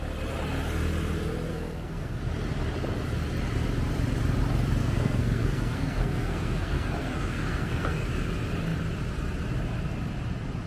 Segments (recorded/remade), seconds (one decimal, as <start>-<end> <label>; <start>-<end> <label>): 0.0-1.5 recorded; 1.5-2.2 remade; 2.2-4.8 recorded; 4.8-8.1 remade; 8.1-10.7 recorded